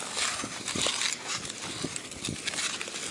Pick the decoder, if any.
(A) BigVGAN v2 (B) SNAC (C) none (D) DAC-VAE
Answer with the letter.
C